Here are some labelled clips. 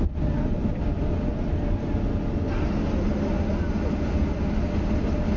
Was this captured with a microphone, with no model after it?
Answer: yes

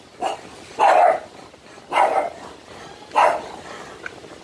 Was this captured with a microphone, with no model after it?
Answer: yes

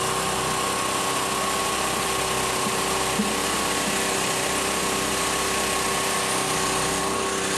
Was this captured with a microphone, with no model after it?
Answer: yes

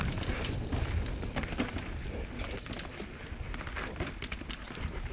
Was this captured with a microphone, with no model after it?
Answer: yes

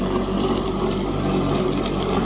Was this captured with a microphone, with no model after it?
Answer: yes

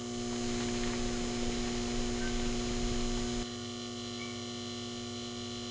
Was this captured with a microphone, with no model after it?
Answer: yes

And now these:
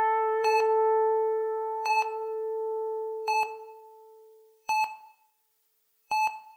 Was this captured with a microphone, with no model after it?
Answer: no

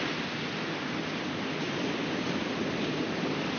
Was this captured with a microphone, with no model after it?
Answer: no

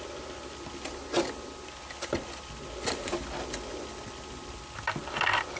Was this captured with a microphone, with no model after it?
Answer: yes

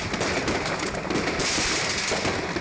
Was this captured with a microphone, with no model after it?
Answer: yes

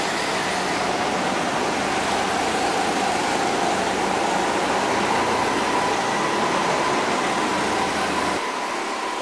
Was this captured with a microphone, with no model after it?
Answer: yes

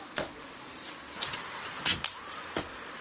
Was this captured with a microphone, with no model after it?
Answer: yes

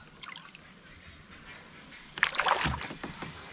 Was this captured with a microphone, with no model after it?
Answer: yes